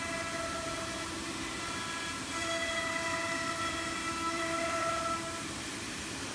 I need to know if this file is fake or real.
fake